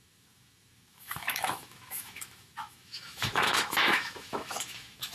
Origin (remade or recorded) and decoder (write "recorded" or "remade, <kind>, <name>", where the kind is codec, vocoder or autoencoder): remade, autoencoder, DAC-VAE